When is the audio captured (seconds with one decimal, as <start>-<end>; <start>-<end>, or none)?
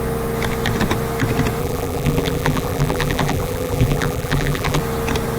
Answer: 0.0-1.6; 4.8-5.4